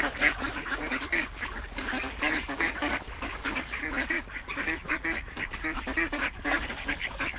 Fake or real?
fake